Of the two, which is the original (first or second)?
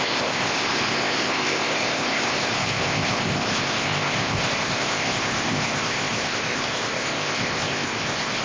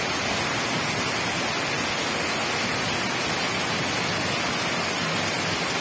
second